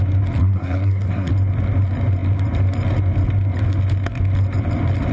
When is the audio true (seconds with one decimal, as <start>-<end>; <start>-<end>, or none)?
0.0-0.4; 1.3-5.1